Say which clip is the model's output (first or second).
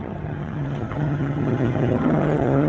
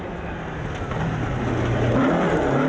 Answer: first